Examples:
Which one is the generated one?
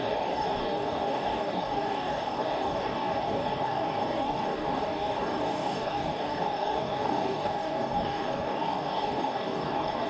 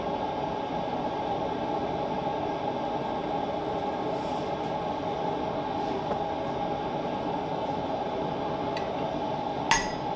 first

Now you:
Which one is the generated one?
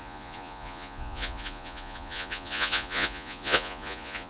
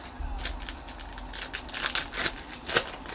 first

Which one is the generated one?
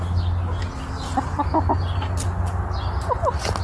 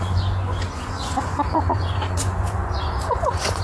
second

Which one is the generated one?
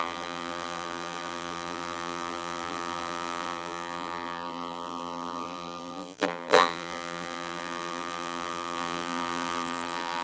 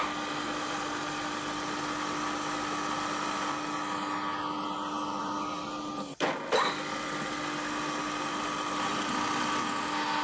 first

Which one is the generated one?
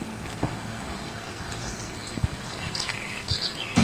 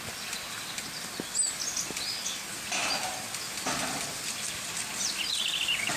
first